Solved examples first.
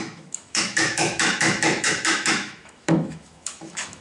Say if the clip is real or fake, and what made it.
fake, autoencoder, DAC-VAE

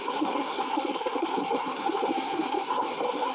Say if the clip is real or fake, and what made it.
fake, codec, SNAC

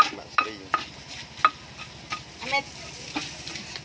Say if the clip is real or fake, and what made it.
real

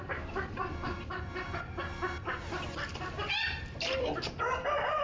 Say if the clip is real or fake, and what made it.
real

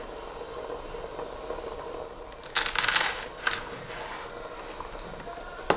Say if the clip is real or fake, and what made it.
real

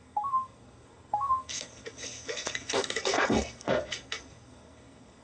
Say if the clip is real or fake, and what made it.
fake, codec, SNAC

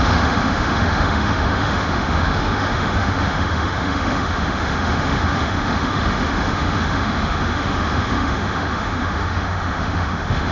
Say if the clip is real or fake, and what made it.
fake, autoencoder, DAC-VAE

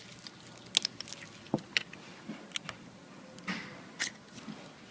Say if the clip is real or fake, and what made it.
real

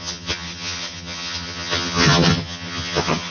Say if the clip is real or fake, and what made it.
fake, vocoder, HiFi-GAN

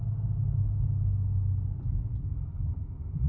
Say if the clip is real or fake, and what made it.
real